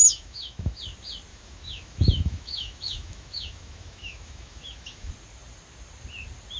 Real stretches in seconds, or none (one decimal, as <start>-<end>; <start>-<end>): 0.8-1.3; 5.1-6.6